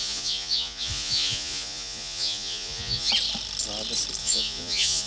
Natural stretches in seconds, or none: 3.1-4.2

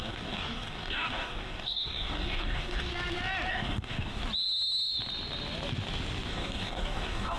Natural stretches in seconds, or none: 2.9-3.5; 4.2-6.3

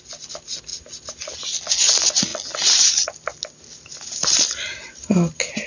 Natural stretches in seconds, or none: 0.0-5.7

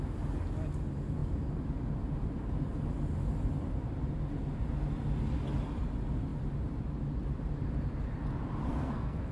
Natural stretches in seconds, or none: 0.0-8.7

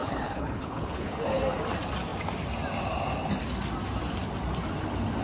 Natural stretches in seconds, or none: 1.4-5.2